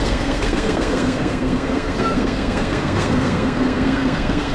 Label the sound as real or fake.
fake